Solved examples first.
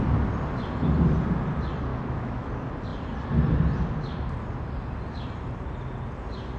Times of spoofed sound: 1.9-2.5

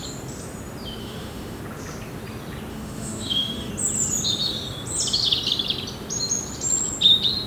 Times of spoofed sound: 1.0-1.6; 2.7-3.7

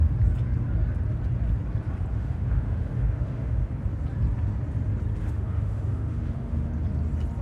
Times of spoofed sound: 2.1-3.7; 5.2-6.7

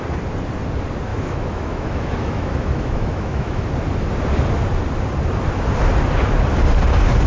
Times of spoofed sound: 1.1-3.6